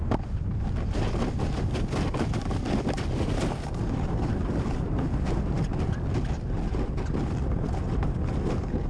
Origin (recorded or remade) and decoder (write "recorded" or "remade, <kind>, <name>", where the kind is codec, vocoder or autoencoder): recorded